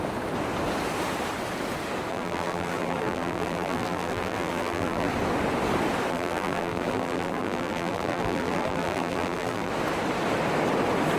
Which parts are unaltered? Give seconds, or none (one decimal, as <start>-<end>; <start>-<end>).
0.0-2.1; 5.1-6.1; 9.7-11.2